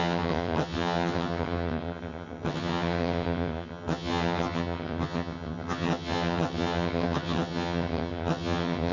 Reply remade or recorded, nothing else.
remade